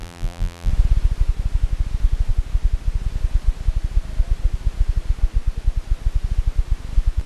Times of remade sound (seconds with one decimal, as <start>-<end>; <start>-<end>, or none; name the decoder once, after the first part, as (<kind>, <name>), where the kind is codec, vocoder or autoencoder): 0.0-0.7 (vocoder, BigVGAN v2)